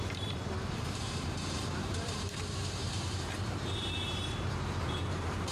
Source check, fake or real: fake